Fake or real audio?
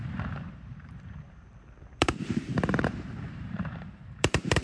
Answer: fake